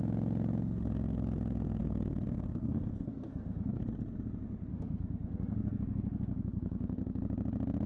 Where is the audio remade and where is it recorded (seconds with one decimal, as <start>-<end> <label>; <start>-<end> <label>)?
0.0-1.8 recorded; 1.8-3.8 remade; 3.8-4.7 recorded; 4.7-7.2 remade; 7.2-7.9 recorded